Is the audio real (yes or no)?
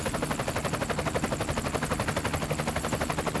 yes